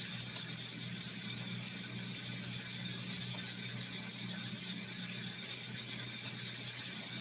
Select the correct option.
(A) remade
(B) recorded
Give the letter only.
B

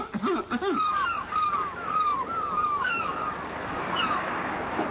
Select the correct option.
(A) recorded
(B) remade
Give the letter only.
B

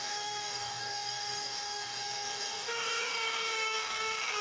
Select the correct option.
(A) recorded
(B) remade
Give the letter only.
B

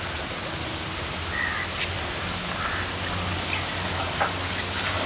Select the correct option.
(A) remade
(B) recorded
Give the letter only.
B